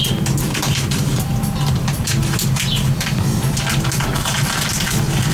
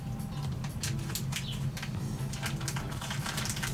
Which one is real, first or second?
second